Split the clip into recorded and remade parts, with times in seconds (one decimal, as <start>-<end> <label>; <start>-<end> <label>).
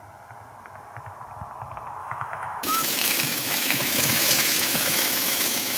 0.0-2.0 recorded; 2.0-5.8 remade